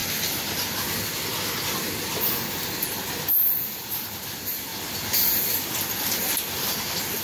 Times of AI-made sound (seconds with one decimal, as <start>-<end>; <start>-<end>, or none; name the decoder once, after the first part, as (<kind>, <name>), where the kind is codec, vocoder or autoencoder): 3.7-7.2 (vocoder, BigVGAN v2)

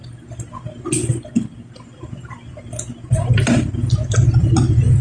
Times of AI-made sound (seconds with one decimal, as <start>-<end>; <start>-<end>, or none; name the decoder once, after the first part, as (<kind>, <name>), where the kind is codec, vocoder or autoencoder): none

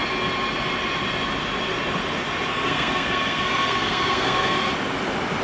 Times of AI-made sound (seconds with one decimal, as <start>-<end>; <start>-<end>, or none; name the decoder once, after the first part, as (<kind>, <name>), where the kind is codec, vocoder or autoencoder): 2.5-4.7 (codec, SNAC)

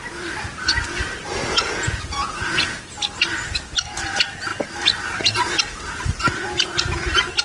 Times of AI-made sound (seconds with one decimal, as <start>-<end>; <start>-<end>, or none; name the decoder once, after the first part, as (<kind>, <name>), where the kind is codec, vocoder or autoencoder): 1.4-2.8 (vocoder, Vocos)

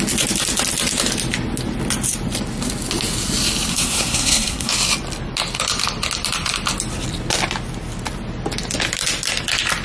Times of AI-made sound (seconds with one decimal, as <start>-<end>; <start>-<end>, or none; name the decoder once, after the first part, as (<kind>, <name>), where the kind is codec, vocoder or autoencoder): 3.7-4.7 (codec, SNAC)

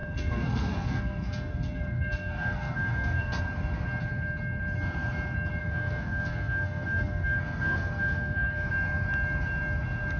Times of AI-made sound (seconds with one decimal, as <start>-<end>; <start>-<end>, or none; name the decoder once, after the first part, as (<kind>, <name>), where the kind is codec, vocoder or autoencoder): 0.0-3.4 (codec, SNAC); 5.6-8.7